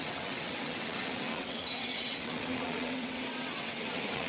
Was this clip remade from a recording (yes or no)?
yes